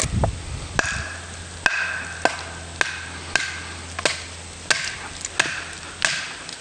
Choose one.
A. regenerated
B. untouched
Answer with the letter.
B